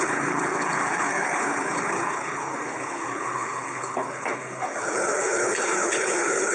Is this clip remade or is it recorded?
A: remade